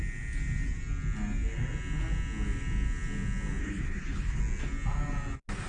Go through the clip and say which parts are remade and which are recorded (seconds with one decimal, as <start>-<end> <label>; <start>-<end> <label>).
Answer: 0.0-3.6 recorded; 3.6-4.4 remade; 4.4-5.7 recorded